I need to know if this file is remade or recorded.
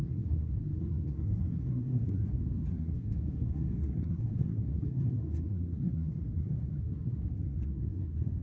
remade